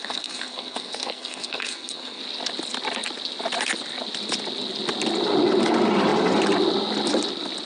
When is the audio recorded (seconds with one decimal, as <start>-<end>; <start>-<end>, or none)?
2.2-7.7